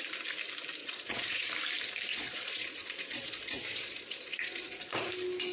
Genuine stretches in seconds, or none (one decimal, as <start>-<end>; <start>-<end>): 0.0-0.8; 1.5-2.1; 5.1-5.5